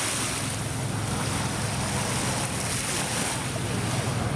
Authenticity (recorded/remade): recorded